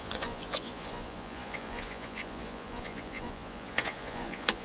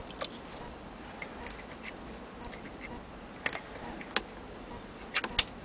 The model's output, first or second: first